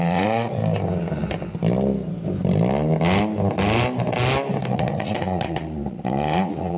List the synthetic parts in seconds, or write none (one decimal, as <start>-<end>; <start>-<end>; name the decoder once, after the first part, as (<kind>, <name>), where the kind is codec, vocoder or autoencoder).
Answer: 0.0-0.6 (vocoder, Vocos); 4.7-6.8